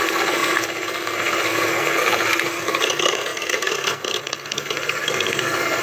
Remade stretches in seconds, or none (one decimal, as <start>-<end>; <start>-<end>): 0.0-5.8